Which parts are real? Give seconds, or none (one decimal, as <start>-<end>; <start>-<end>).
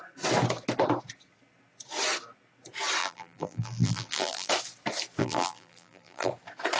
0.0-3.0; 4.5-5.2; 6.3-6.8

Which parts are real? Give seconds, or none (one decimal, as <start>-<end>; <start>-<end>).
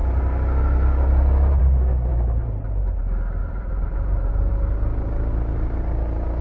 0.0-2.1; 3.0-3.4; 4.5-6.4